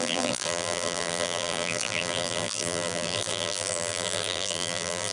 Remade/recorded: remade